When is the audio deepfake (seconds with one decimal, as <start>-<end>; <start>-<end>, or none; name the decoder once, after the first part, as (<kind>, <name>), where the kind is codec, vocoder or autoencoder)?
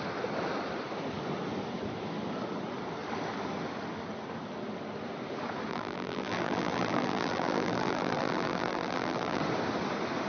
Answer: 5.7-9.4 (vocoder, BigVGAN v2)